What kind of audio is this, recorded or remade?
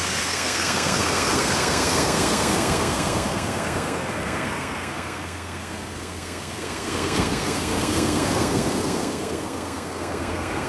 remade